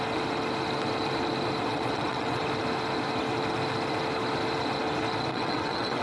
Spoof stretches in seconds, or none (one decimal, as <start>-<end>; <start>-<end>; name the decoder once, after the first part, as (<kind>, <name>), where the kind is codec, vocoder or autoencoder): 1.7-2.4 (vocoder, WaveNeXt); 5.3-6.0